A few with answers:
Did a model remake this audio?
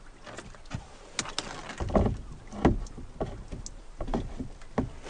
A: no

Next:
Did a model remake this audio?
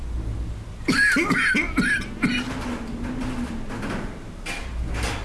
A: no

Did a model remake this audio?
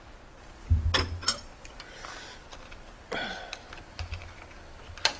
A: no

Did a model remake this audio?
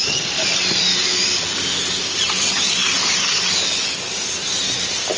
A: no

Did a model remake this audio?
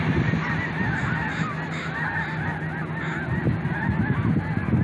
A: no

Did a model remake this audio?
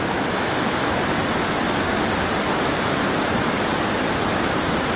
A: no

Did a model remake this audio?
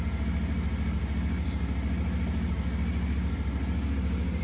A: no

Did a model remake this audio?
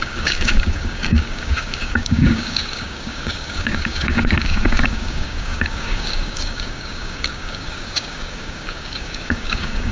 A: yes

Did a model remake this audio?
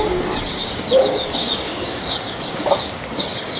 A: yes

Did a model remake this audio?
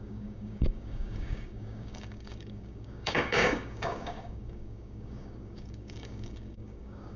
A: yes